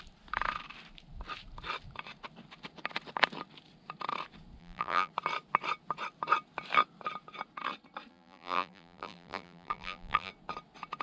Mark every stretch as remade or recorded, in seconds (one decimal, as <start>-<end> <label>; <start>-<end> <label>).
0.0-4.6 recorded; 4.6-5.1 remade; 5.1-8.1 recorded; 8.1-10.3 remade; 10.3-11.0 recorded